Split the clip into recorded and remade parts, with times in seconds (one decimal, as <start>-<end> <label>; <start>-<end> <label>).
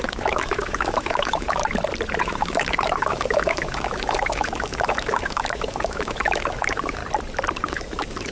0.0-1.6 remade; 1.6-2.2 recorded; 2.2-7.0 remade; 7.0-7.6 recorded; 7.6-8.3 remade